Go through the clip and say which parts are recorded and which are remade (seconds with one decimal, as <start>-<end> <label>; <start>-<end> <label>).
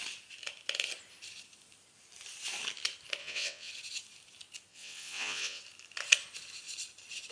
0.0-3.2 recorded; 3.2-3.7 remade; 3.7-4.7 recorded; 4.7-5.6 remade; 5.6-7.3 recorded